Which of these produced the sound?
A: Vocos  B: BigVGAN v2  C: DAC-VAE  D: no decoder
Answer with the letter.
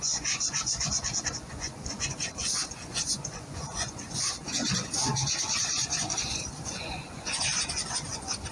A